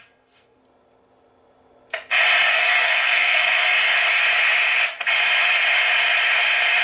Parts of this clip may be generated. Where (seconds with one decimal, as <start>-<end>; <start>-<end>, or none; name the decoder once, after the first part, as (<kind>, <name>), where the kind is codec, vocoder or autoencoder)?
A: 0.0-0.6 (codec, SNAC); 2.5-3.7